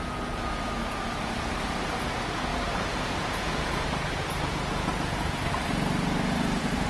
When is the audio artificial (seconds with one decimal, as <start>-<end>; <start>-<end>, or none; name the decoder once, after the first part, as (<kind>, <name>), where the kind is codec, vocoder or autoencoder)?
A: 0.0-6.9 (vocoder, Vocos)